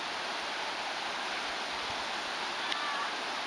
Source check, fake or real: real